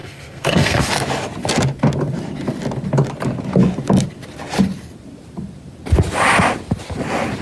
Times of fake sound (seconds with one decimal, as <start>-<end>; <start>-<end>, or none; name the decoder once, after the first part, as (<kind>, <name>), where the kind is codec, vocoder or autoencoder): 0.0-0.9 (codec, SNAC)